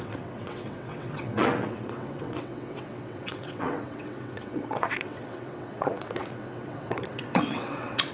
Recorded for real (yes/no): no